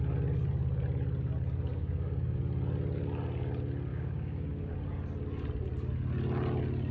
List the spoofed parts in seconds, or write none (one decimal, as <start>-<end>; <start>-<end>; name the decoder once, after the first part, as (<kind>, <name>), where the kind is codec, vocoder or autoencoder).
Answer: 1.7-2.4 (codec, DAC); 3.9-4.7